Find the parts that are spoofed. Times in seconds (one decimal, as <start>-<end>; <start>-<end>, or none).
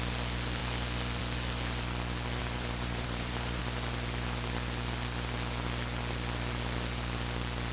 2.4-3.6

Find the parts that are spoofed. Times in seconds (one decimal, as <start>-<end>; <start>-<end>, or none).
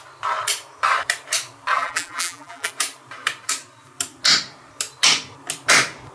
1.7-2.7